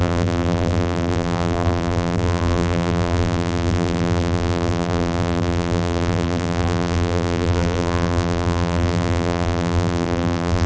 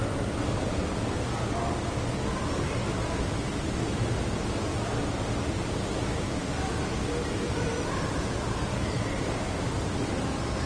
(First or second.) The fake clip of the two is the first